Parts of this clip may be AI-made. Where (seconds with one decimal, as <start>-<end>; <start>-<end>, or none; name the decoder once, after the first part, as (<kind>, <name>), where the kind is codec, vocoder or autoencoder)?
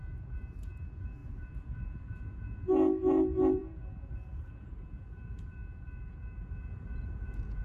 0.0-7.6 (vocoder, Vocos)